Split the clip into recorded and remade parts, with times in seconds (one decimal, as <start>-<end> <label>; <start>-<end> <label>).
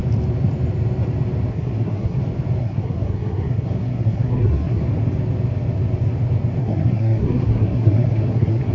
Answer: 0.0-1.5 recorded; 1.5-2.2 remade; 2.2-2.6 recorded; 2.6-4.8 remade; 4.8-6.6 recorded; 6.6-8.7 remade